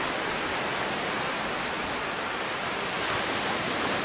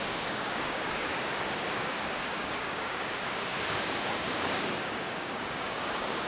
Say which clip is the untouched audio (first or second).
first